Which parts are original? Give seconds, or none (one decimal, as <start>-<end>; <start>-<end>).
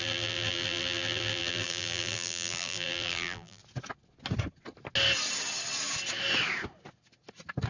3.6-7.7